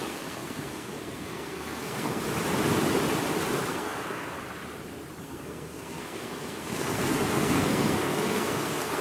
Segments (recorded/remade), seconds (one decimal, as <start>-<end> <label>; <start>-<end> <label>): 0.0-2.2 remade; 2.2-3.7 recorded; 3.7-4.4 remade; 4.4-5.2 recorded; 5.2-9.0 remade